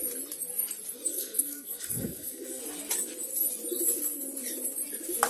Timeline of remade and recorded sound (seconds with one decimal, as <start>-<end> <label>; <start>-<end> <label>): 0.0-1.1 recorded; 1.1-2.6 remade; 2.6-5.3 recorded